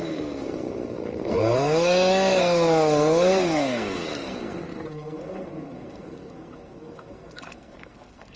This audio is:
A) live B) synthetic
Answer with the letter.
B